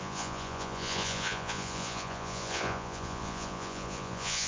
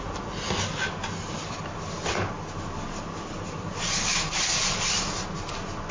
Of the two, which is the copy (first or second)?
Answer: first